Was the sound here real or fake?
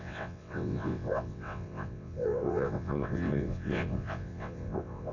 fake